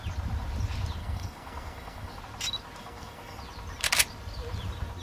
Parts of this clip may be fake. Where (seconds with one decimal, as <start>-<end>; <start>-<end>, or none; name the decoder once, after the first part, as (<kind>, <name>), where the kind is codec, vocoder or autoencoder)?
1.0-2.2 (codec, SNAC); 2.8-3.4